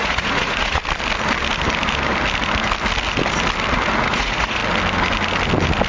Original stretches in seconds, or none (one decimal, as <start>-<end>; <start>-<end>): 0.8-4.0; 4.6-5.9